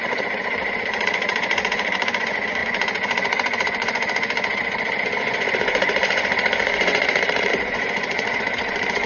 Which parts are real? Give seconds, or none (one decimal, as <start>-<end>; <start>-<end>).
none